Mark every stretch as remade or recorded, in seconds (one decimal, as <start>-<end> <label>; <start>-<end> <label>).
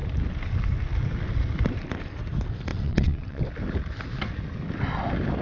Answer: 0.0-2.7 recorded; 2.7-3.4 remade; 3.4-5.4 recorded